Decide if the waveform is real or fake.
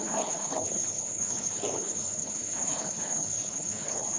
fake